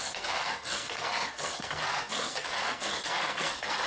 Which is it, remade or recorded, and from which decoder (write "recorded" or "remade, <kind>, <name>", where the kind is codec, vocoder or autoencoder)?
remade, codec, SNAC